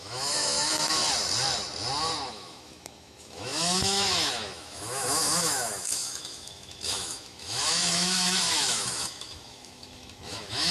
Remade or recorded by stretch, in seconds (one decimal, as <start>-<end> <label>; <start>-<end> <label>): 0.0-1.0 remade; 1.0-2.3 recorded; 2.3-10.7 remade